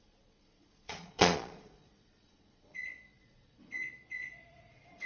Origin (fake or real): fake